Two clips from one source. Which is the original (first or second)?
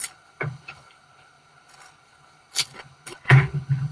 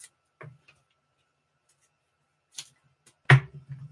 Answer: second